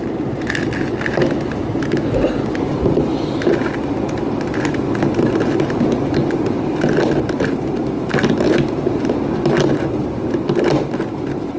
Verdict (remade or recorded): recorded